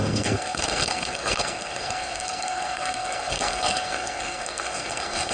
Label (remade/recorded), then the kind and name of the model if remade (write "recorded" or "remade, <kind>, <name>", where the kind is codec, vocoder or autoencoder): remade, codec, SNAC